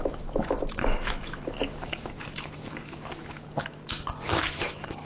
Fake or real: fake